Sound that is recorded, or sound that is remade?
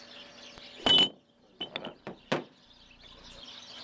recorded